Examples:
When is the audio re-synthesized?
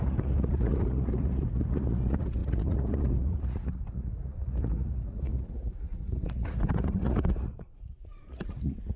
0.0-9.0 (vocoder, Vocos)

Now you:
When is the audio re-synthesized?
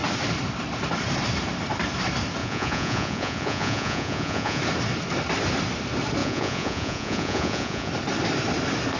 2.4-4.6 (vocoder, Vocos); 6.2-7.9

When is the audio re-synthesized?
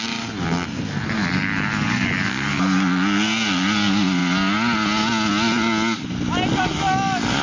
none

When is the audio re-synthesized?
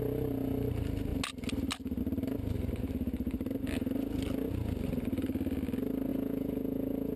6.1-7.2 (vocoder, Vocos)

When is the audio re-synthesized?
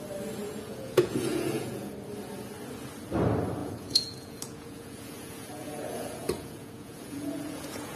0.4-1.9 (vocoder, Vocos); 3.6-8.0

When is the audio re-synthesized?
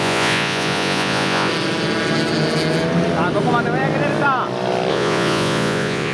0.0-1.5 (vocoder, Vocos); 4.9-6.1